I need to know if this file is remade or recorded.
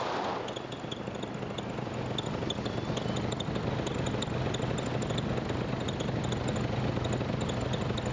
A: recorded